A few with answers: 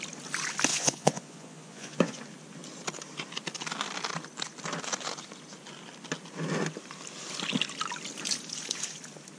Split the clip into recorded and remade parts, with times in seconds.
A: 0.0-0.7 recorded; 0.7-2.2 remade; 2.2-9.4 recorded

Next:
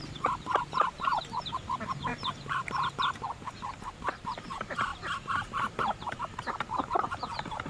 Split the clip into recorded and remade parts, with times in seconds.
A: 0.0-4.9 remade; 4.9-5.8 recorded; 5.8-7.7 remade

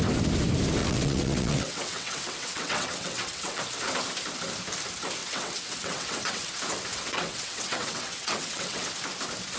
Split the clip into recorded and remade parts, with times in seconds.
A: 0.0-0.8 recorded; 0.8-3.6 remade; 3.6-5.2 recorded; 5.2-6.5 remade; 6.5-6.9 recorded; 6.9-8.8 remade; 8.8-9.6 recorded

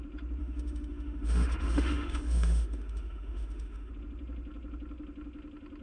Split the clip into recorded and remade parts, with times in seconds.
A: 0.0-0.4 recorded; 0.4-3.9 remade; 3.9-5.8 recorded